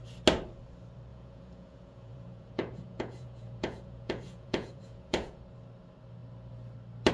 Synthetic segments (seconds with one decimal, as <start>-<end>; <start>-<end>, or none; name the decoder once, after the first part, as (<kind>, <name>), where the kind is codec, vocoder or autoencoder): 1.1-5.4 (vocoder, Vocos)